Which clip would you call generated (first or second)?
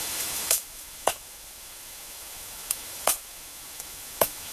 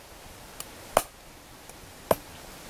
first